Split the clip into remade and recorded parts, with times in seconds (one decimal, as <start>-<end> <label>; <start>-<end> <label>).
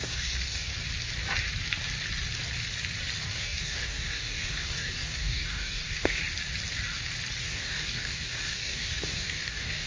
0.0-0.7 remade; 0.7-3.3 recorded; 3.3-6.2 remade; 6.2-7.4 recorded; 7.4-9.9 remade